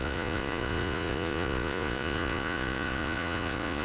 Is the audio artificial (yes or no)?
yes